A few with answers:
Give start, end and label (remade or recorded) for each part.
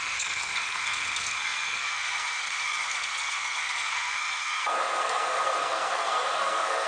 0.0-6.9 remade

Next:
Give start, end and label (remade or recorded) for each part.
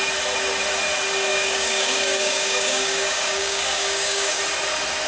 0.0-1.3 recorded; 1.3-4.4 remade; 4.4-5.1 recorded